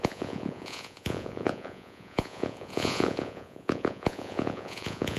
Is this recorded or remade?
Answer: remade